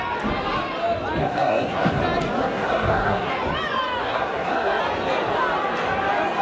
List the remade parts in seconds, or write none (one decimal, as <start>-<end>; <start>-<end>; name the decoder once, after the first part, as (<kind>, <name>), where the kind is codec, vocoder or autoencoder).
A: 1.2-2.0 (codec, SNAC); 2.4-3.3; 4.0-4.8